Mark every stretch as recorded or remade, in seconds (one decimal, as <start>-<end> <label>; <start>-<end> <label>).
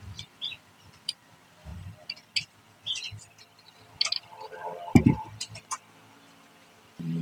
0.0-1.7 remade; 1.7-5.4 recorded; 5.4-7.2 remade